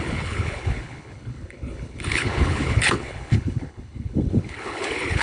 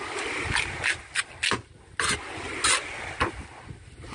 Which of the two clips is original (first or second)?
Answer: second